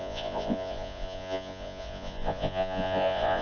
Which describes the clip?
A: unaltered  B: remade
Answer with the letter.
B